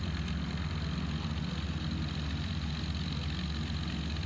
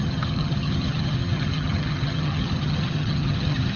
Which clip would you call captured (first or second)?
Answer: first